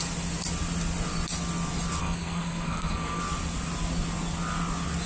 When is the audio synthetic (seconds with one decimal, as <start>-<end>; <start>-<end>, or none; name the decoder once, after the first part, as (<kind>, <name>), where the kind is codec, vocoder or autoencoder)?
2.0-3.2 (codec, SNAC)